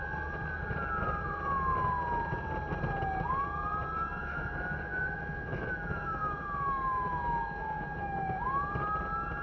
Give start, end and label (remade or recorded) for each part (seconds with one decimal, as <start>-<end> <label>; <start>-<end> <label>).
0.0-4.2 recorded; 4.2-8.7 remade; 8.7-9.4 recorded